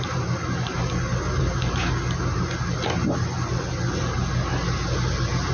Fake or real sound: real